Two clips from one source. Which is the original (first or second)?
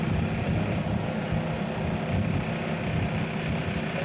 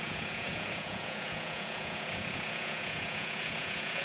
first